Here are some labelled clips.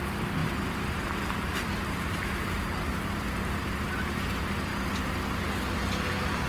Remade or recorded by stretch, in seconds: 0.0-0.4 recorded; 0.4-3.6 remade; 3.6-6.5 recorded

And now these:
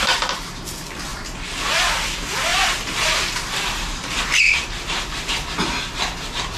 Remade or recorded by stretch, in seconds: 0.0-2.5 recorded; 2.5-5.7 remade; 5.7-6.6 recorded

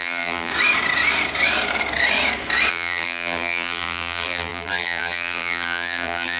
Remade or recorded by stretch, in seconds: 0.0-0.5 remade; 0.5-2.7 recorded; 2.7-6.4 remade

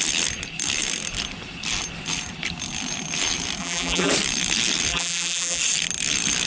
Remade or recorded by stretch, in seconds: 0.0-3.6 recorded; 3.6-4.1 remade; 4.1-4.9 recorded; 4.9-5.6 remade; 5.6-6.5 recorded

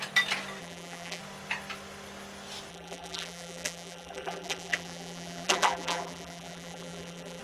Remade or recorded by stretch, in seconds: 0.0-0.6 recorded; 0.6-1.2 remade; 1.2-2.7 recorded; 2.7-7.4 remade